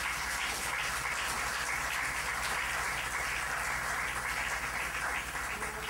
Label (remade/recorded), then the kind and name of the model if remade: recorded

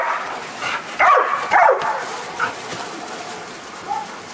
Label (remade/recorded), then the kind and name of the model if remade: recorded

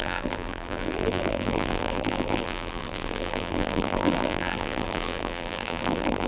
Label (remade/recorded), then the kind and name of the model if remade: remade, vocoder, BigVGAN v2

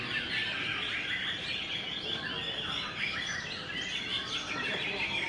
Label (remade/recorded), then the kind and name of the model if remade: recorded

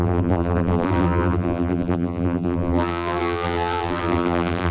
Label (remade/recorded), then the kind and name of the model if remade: remade, vocoder, BigVGAN v2